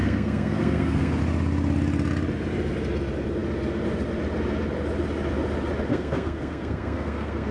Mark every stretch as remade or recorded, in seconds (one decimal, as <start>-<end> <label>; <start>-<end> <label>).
0.0-1.2 remade; 1.2-5.9 recorded; 5.9-7.5 remade